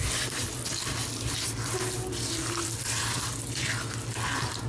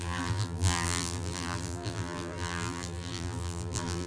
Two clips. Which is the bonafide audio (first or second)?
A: first